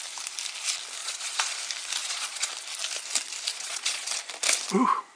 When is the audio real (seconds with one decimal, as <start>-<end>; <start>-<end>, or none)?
0.0-1.0; 1.6-2.0; 2.5-3.5; 4.1-5.2